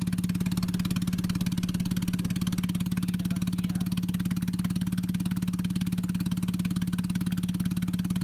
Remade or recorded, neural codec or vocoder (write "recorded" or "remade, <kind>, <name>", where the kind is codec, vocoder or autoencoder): recorded